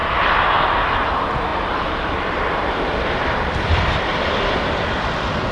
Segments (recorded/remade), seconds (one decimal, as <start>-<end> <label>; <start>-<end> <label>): 0.0-1.5 recorded; 1.5-4.0 remade; 4.0-5.5 recorded